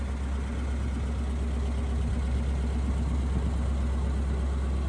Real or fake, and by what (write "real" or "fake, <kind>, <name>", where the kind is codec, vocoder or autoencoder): real